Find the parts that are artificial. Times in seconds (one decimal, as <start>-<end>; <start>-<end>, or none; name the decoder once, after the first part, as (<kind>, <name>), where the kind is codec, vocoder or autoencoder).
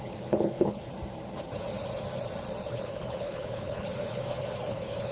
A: 0.0-0.9 (codec, HILCodec); 2.7-5.1